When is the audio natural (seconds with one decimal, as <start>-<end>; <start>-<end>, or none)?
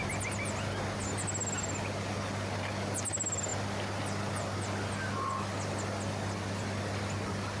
0.0-7.6